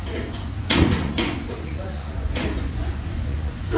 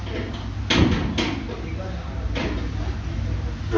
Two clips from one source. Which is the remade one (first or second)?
first